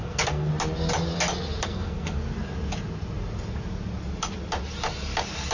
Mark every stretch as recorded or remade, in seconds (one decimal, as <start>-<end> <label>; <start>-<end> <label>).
0.0-0.5 remade; 0.5-1.6 recorded; 1.6-2.2 remade; 2.2-5.5 recorded